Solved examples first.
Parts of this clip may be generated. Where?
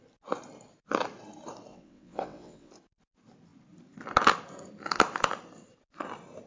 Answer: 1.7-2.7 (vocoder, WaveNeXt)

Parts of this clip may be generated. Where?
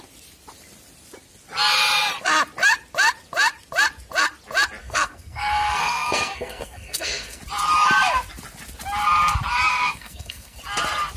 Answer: 4.8-7.4 (codec, SNAC); 9.7-10.6